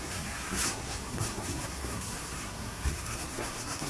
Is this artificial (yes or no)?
yes